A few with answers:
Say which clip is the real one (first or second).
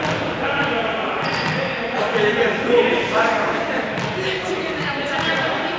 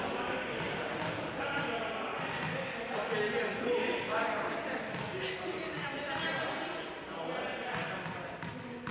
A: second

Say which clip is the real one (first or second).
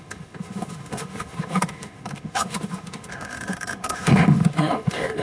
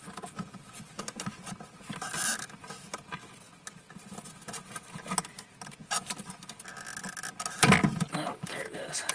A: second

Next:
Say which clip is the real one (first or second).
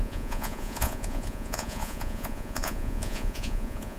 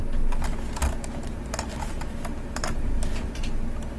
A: second